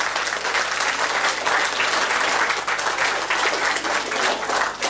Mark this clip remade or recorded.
recorded